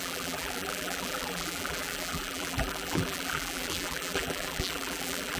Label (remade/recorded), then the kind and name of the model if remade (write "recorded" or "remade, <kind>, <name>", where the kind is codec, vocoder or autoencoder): remade, vocoder, BigVGAN v2